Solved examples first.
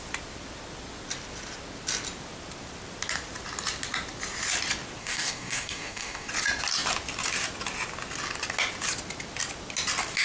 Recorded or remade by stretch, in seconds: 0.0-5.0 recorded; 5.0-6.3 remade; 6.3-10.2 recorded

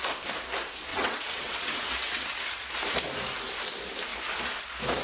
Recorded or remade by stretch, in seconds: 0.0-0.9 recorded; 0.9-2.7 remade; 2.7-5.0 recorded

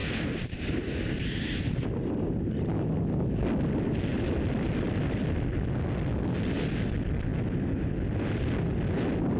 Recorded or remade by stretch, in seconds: 0.0-3.0 remade; 3.0-4.1 recorded; 4.1-5.2 remade; 5.2-9.4 recorded

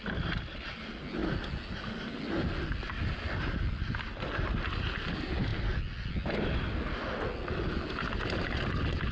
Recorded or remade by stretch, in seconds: 0.0-9.1 recorded

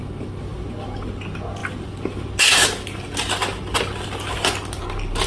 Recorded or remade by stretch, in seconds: 0.0-5.3 recorded

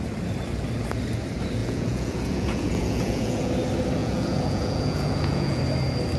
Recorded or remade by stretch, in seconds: 0.0-1.6 recorded; 1.6-3.5 remade; 3.5-4.0 recorded; 4.0-5.6 remade; 5.6-6.2 recorded